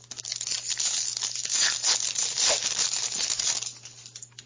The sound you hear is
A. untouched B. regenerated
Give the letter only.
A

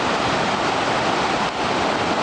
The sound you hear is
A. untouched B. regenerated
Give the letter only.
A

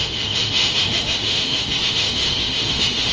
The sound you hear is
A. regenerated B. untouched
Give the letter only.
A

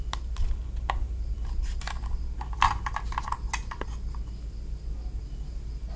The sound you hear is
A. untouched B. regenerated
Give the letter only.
A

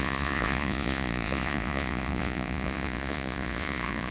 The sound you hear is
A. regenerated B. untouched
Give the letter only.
A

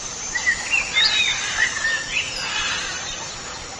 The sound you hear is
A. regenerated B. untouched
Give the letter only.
A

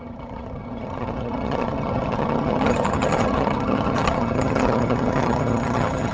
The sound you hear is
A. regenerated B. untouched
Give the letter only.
A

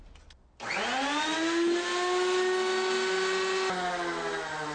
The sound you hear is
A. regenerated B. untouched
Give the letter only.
B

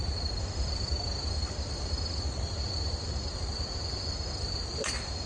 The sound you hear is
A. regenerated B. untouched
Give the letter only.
B